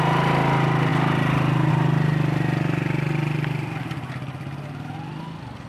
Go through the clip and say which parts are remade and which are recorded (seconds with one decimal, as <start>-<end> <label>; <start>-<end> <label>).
0.0-5.7 recorded